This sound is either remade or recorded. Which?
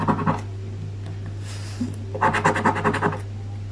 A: recorded